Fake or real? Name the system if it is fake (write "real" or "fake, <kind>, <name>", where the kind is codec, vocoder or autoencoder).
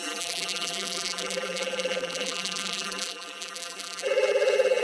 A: fake, vocoder, BigVGAN v2